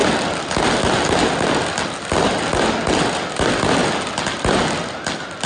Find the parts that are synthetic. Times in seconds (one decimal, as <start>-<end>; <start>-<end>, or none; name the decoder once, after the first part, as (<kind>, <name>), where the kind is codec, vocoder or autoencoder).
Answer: none